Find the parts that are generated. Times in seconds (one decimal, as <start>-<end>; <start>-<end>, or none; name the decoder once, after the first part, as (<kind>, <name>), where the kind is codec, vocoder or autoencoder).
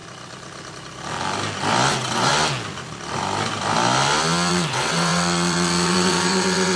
1.9-2.3 (vocoder, WaveNeXt); 4.5-6.8